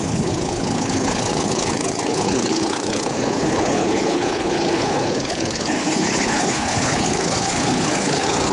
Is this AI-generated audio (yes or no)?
yes